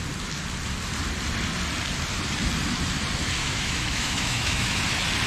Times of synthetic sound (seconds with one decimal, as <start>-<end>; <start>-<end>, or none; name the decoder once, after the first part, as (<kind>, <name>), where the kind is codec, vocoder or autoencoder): 3.4-4.8 (autoencoder, DAC-VAE)